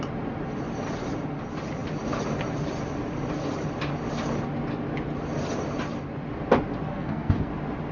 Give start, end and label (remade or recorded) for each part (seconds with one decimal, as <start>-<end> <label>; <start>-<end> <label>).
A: 0.0-6.9 recorded; 6.9-7.5 remade; 7.5-7.9 recorded